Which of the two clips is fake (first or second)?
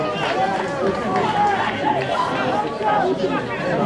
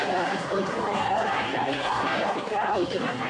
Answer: second